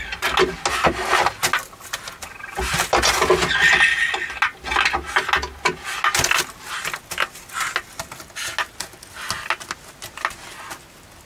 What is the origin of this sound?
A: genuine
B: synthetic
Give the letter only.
A